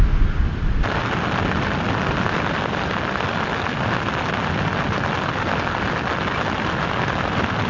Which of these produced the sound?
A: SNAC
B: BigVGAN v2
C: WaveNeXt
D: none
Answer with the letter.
D